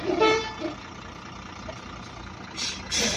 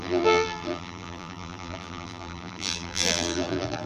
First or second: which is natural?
first